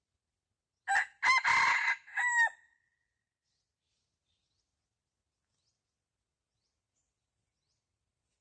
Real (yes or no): yes